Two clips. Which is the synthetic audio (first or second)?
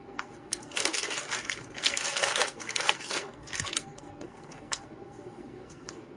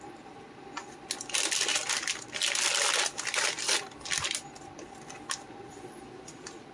first